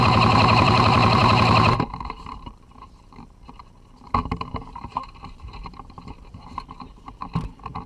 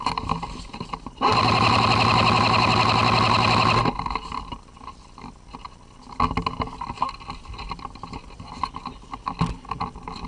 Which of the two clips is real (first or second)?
second